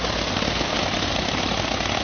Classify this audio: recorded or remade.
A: recorded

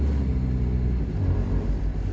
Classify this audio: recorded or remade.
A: recorded